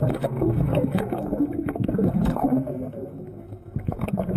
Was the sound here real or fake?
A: fake